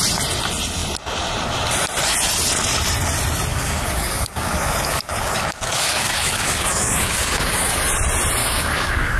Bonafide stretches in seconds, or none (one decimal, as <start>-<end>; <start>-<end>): 0.0-3.5; 7.8-8.4